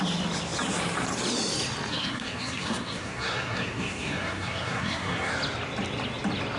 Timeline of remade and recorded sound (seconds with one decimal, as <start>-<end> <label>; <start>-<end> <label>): 0.0-1.9 recorded; 1.9-5.3 remade; 5.3-6.6 recorded